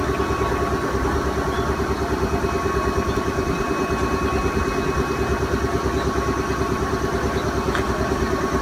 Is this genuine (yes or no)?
yes